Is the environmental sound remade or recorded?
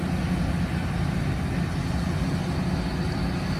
recorded